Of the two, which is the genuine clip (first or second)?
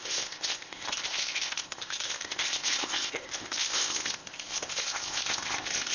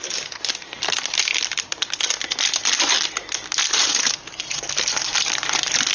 second